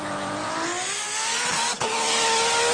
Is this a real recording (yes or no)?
yes